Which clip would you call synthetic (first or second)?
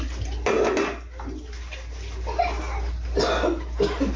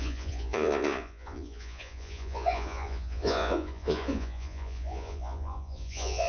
second